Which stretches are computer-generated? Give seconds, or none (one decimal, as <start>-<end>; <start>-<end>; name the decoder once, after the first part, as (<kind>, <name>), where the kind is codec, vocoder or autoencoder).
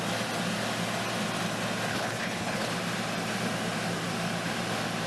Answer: 1.9-2.7 (codec, HILCodec)